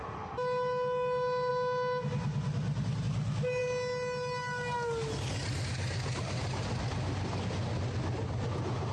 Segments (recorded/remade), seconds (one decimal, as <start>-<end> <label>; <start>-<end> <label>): 0.0-8.9 recorded